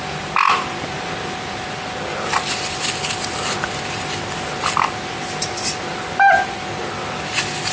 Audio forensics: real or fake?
real